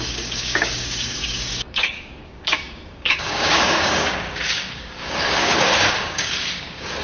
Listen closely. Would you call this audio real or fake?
fake